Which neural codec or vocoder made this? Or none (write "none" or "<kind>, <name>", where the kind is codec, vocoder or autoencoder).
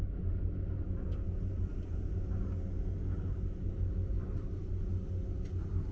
none